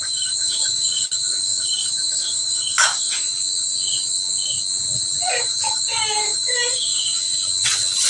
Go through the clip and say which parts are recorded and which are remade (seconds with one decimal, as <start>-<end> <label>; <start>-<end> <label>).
0.0-3.3 remade; 3.3-5.3 recorded; 5.3-6.9 remade; 6.9-8.1 recorded